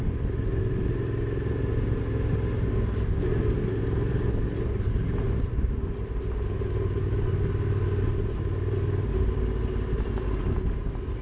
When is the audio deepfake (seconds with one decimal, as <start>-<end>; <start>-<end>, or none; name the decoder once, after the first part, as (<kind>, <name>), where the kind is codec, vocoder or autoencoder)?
none